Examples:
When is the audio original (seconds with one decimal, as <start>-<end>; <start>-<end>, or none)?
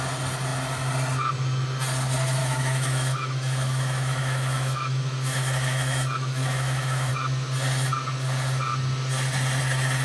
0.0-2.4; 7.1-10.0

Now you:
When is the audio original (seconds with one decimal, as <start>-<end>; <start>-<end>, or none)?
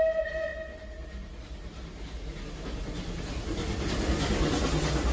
0.0-5.1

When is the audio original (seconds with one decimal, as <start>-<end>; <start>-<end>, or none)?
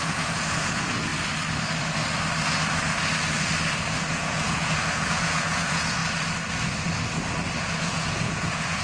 1.1-4.0; 6.0-7.6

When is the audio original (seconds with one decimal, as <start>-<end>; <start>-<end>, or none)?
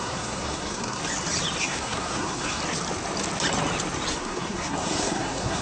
1.0-1.6; 2.6-4.1